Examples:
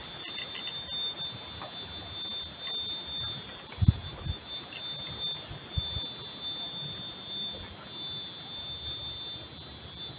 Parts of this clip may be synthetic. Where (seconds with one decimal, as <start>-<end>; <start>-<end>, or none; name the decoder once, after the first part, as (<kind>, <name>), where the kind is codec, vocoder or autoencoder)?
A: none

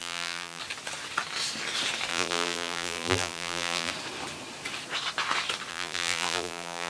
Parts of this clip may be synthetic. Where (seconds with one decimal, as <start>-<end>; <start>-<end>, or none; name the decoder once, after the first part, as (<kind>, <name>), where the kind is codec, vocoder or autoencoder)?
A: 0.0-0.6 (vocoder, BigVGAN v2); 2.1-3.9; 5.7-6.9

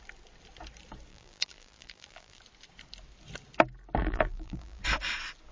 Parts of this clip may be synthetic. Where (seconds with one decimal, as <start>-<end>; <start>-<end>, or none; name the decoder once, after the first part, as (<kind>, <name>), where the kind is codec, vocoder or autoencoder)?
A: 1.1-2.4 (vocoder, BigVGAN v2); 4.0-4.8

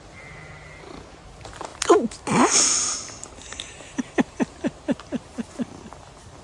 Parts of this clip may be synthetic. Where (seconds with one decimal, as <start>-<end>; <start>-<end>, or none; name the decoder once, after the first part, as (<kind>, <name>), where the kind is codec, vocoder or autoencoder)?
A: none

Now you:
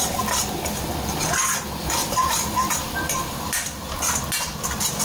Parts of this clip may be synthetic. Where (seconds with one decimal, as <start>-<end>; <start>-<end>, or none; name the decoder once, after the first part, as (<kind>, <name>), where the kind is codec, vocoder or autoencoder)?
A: 2.0-4.0 (vocoder, BigVGAN v2)

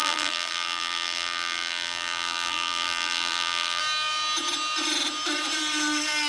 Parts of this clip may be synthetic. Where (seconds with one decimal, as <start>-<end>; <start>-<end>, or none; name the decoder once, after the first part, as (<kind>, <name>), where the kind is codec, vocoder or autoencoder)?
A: 0.0-3.8 (vocoder, BigVGAN v2)